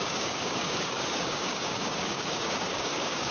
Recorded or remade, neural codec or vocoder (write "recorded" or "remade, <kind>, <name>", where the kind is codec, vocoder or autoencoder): remade, codec, DAC